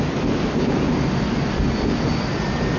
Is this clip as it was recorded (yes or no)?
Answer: yes